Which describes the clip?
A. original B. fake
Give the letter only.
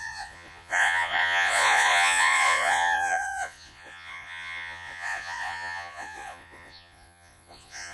B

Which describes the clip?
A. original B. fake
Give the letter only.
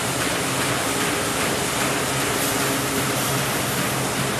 A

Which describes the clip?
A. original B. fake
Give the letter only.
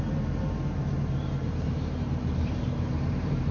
B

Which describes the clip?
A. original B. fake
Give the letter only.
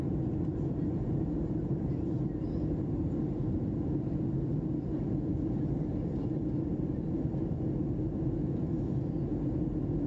A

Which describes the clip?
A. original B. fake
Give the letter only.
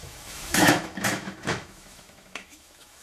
B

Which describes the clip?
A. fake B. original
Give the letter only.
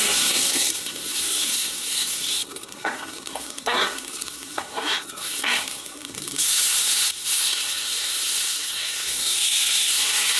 A